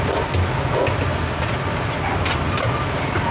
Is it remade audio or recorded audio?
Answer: recorded